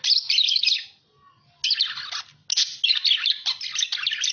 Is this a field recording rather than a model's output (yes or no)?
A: yes